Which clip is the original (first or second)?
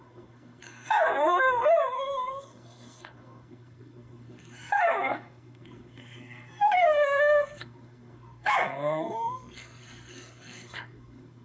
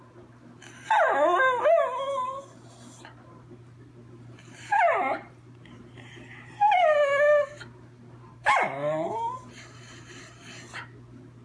second